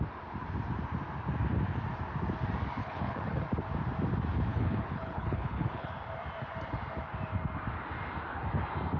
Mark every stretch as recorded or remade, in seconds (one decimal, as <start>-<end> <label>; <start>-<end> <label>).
0.0-2.8 recorded; 2.8-3.4 remade; 3.4-4.5 recorded; 4.5-5.9 remade; 5.9-9.0 recorded